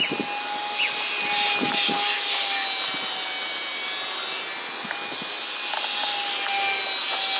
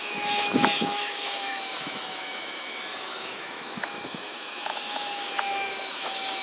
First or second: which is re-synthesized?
second